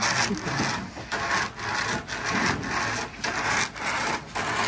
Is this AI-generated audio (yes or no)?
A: no